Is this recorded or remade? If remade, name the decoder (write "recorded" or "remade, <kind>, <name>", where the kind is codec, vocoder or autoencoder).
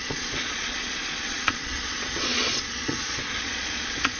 remade, vocoder, Vocos